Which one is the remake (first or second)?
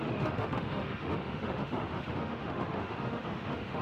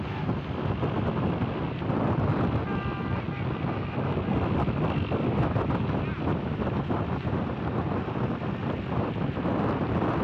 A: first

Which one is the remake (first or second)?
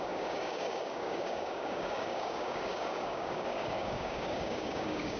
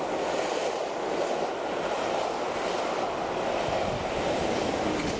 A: first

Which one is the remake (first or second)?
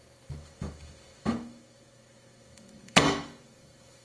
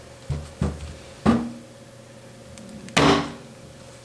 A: first